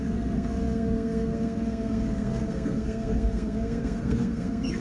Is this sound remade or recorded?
remade